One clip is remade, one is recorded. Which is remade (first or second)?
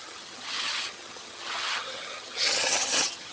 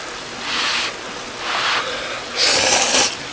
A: first